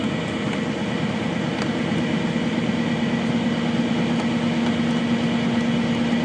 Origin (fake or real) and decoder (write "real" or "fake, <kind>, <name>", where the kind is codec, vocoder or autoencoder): real